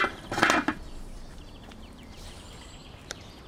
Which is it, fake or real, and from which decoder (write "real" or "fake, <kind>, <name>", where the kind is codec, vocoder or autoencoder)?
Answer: fake, vocoder, BigVGAN v2